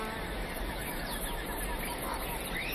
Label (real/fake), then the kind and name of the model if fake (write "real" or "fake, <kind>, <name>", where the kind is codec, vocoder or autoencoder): real